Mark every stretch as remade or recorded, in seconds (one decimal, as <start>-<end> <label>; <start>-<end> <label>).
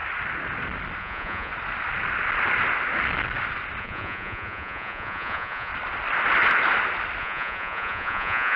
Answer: 0.0-1.0 recorded; 1.0-1.5 remade; 1.5-3.8 recorded; 3.8-5.7 remade; 5.7-7.2 recorded; 7.2-8.6 remade